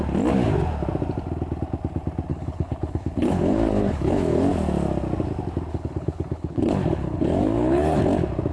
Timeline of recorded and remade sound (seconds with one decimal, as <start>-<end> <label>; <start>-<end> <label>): 0.0-2.3 recorded; 2.3-4.5 remade; 4.5-5.7 recorded; 5.7-8.0 remade; 8.0-8.5 recorded